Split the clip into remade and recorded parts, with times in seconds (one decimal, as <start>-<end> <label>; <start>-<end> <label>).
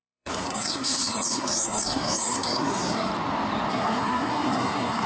0.0-3.1 remade; 3.1-3.7 recorded; 3.7-5.1 remade